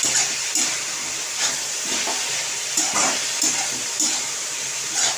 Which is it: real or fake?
fake